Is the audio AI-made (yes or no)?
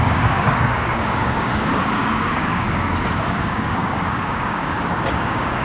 yes